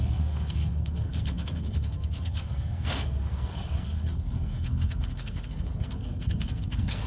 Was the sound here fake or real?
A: fake